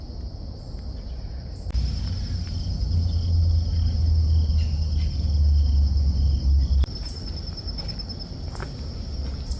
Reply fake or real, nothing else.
real